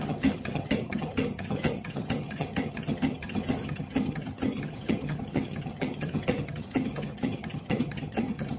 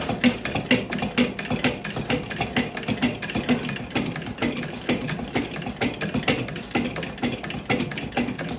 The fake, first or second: first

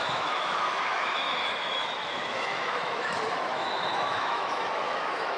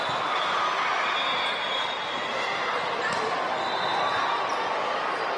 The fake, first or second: first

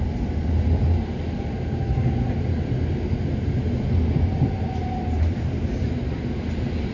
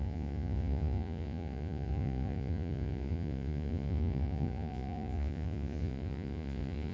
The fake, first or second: second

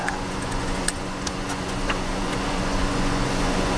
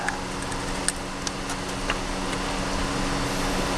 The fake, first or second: first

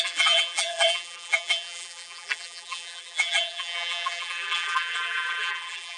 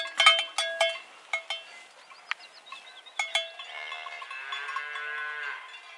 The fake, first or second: first